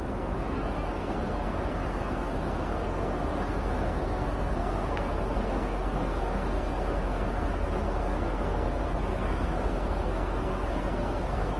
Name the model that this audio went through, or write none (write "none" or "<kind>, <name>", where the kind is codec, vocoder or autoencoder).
codec, SNAC